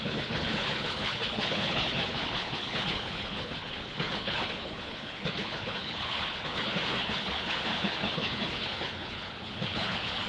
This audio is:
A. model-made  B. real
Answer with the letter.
A